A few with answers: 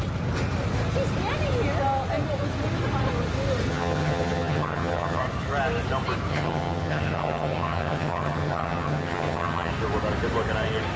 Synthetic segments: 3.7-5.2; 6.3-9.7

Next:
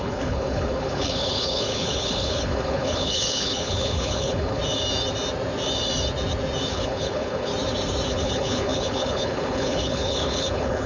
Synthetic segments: 0.0-4.6; 6.7-7.5; 8.1-10.9

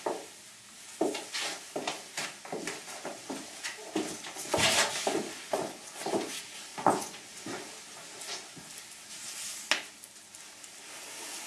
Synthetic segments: 6.7-7.3

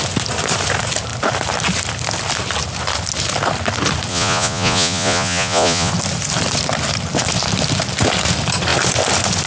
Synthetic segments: 4.1-5.9

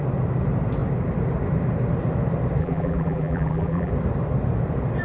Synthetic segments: 2.6-3.9